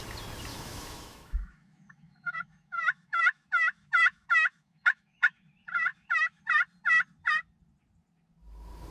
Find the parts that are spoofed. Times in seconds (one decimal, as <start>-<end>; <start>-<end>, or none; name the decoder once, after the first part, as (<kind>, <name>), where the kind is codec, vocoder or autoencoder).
0.5-5.4 (autoencoder, DAC-VAE); 5.9-6.4